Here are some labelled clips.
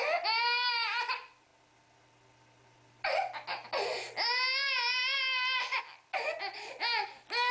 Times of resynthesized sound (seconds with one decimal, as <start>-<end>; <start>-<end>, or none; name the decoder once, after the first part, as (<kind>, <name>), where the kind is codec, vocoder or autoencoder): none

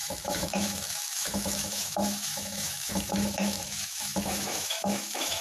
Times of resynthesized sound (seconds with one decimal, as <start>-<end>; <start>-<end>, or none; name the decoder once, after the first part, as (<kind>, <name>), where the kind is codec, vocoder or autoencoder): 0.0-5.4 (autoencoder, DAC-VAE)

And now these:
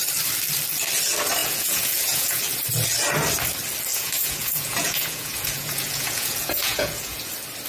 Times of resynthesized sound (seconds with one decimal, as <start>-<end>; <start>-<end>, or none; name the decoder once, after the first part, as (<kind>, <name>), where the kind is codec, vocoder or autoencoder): 1.4-2.4 (vocoder, Vocos); 3.9-7.3

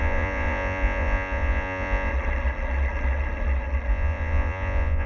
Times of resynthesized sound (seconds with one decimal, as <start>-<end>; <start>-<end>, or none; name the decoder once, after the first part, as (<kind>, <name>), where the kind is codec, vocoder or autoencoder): 0.0-2.1 (vocoder, Vocos); 3.9-5.1

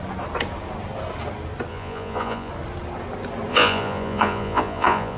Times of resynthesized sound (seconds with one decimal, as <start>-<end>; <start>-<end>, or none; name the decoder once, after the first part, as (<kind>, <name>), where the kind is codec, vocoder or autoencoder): 1.7-2.5 (vocoder, Vocos); 3.5-5.2

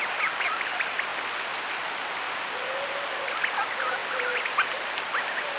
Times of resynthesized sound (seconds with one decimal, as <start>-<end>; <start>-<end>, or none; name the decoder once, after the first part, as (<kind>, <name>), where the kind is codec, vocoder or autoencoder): none

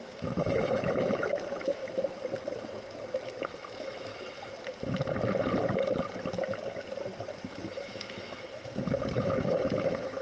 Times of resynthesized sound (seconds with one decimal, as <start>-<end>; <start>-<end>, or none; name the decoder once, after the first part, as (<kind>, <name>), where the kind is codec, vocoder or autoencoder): 0.0-1.8 (autoencoder, DAC-VAE); 3.4-4.1; 7.5-10.2

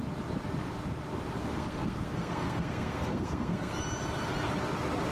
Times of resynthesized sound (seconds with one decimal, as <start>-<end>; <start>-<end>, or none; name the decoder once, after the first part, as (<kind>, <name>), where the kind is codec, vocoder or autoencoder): 1.4-3.8 (codec, SNAC)